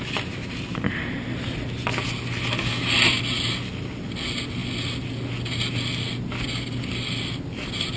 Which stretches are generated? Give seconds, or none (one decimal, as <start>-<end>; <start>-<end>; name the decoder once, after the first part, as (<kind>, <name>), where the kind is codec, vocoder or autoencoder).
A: none